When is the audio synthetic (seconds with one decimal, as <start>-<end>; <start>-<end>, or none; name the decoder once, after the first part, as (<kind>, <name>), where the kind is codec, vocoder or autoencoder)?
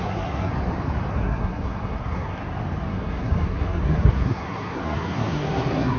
0.0-0.5 (codec, SNAC); 1.1-2.4; 2.9-6.0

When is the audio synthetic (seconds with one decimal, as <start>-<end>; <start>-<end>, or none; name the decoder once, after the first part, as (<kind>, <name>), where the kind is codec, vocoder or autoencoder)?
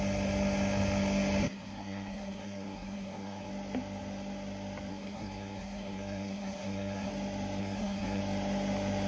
1.4-3.5 (codec, SNAC); 4.9-7.1; 7.6-8.2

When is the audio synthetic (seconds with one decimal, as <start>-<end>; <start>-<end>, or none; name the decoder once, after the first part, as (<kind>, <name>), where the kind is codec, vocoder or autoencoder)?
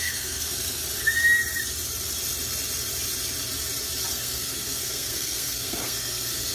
0.0-0.8 (codec, SNAC); 4.1-6.5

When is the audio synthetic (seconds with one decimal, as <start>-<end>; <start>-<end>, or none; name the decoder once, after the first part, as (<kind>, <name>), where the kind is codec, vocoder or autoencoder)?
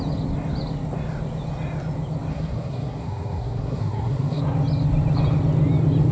2.3-4.4 (codec, SNAC)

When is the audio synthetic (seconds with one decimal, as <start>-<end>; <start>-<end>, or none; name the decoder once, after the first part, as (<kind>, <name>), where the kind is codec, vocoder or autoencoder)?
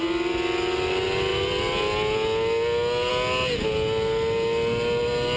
none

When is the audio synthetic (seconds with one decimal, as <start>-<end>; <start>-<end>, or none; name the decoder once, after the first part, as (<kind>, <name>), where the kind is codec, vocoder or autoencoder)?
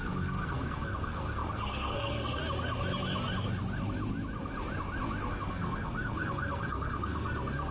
0.0-2.4 (codec, SNAC); 5.3-7.7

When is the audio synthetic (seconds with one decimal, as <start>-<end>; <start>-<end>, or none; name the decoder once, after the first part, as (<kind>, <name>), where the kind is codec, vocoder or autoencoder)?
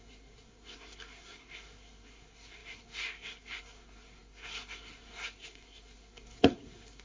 0.0-7.0 (codec, SNAC)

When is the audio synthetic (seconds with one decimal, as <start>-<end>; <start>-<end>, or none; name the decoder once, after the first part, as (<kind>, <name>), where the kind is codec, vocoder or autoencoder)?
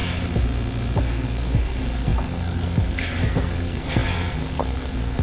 1.0-5.2 (codec, SNAC)